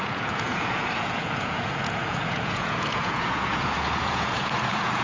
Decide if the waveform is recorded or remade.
remade